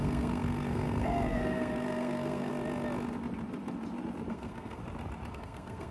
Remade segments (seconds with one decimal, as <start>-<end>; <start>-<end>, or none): 0.0-2.5; 4.3-4.8; 5.3-5.9